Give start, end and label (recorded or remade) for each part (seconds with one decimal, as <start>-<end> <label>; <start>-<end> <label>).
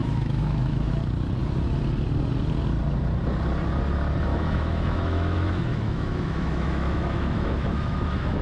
0.0-0.9 remade; 0.9-4.3 recorded; 4.3-8.4 remade